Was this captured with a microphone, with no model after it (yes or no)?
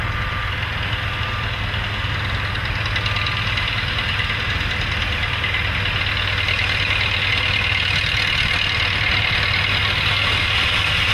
yes